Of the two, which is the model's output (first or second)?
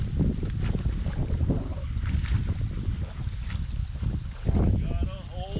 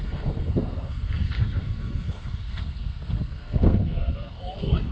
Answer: second